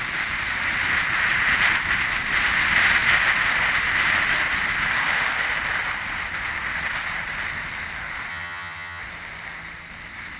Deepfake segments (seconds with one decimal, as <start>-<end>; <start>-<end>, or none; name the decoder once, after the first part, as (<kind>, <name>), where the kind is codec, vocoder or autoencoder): 8.3-9.0 (vocoder, HiFi-GAN)